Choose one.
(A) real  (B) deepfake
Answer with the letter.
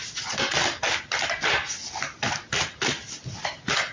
A